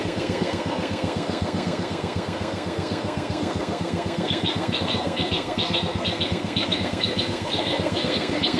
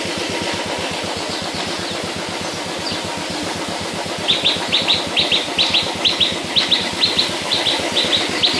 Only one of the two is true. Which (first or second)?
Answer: second